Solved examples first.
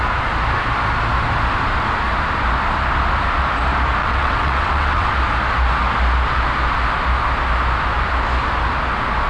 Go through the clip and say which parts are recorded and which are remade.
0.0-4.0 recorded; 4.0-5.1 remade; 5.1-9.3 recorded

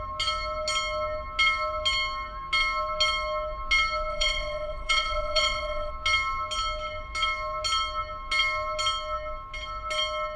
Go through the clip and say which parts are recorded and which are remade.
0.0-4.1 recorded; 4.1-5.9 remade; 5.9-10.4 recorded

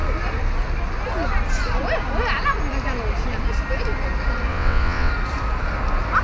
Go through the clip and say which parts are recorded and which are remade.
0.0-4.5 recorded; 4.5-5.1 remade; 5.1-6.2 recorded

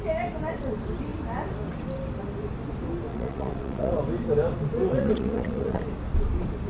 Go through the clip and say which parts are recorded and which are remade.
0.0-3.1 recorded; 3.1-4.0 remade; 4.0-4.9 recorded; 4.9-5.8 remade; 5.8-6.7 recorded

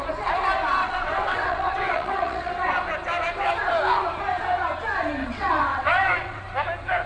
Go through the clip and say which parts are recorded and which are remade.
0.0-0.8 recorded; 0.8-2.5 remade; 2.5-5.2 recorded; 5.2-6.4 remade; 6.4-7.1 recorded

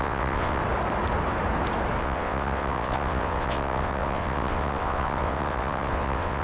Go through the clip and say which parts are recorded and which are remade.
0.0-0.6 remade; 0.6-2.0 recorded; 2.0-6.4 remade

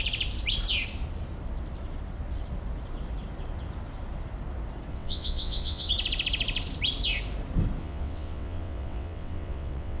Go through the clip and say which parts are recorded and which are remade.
0.0-4.9 recorded; 4.9-5.9 remade; 5.9-7.8 recorded; 7.8-10.0 remade

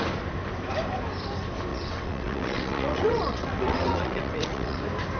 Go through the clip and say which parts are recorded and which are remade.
0.0-1.7 recorded; 1.7-4.8 remade; 4.8-5.2 recorded